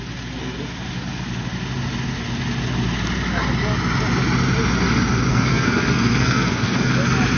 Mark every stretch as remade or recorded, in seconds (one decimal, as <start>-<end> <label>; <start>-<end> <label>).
0.0-5.3 recorded; 5.3-6.9 remade; 6.9-7.4 recorded